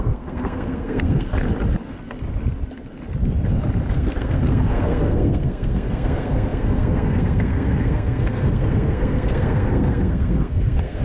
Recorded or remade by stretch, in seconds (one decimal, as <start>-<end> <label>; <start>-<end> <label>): 0.0-1.3 remade; 1.3-3.9 recorded; 3.9-11.0 remade